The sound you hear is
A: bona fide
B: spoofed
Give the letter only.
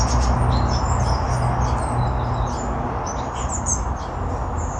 A